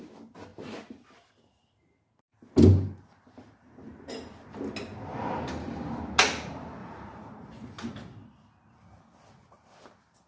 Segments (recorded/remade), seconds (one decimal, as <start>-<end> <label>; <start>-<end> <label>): 0.0-6.8 recorded; 6.8-7.5 remade; 7.5-10.3 recorded